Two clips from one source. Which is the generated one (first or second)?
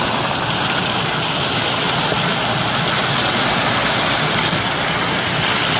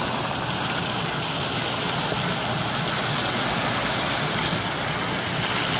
first